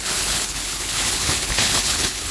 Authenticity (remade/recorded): remade